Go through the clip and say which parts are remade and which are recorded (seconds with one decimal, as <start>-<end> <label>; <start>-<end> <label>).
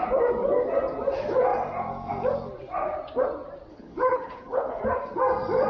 0.0-3.7 recorded; 3.7-4.8 remade; 4.8-5.7 recorded